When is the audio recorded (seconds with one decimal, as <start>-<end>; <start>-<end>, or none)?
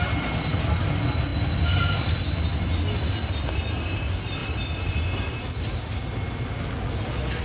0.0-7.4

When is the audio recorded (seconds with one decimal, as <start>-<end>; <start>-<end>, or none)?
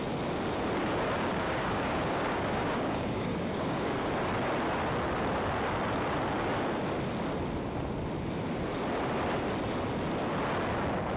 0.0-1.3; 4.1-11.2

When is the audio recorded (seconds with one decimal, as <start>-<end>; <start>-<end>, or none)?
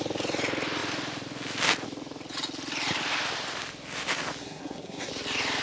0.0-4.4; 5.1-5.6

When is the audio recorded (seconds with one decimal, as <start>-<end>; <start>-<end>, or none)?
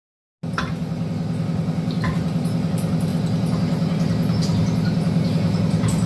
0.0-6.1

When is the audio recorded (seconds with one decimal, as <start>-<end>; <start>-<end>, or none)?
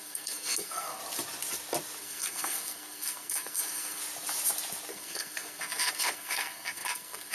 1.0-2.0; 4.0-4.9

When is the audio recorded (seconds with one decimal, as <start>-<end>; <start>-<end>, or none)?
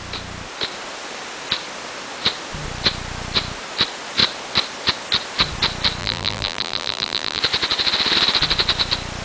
0.0-6.0; 7.4-9.2